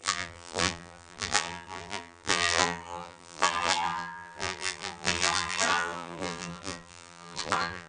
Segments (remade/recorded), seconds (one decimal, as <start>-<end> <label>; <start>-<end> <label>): 0.0-7.9 remade